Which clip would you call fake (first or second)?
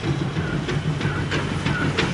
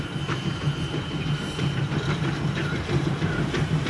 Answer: second